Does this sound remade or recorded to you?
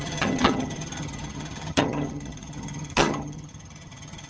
remade